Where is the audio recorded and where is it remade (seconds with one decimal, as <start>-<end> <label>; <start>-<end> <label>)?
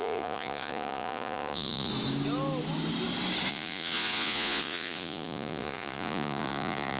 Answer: 0.0-1.9 remade; 1.9-3.5 recorded; 3.5-7.0 remade